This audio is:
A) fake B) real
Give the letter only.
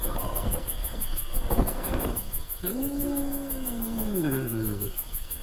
A